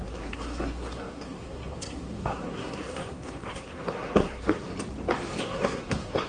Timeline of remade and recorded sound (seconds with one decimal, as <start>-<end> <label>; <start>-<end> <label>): 0.0-4.7 remade; 4.7-5.4 recorded; 5.4-6.3 remade